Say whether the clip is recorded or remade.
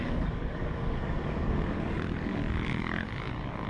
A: remade